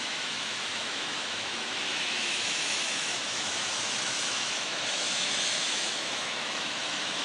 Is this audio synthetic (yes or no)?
yes